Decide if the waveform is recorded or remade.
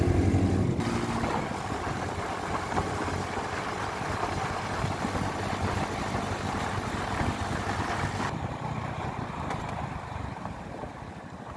recorded